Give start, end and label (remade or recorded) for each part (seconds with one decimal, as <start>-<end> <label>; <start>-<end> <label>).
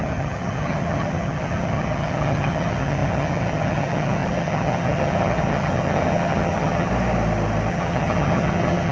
0.0-6.9 remade; 6.9-7.7 recorded; 7.7-8.9 remade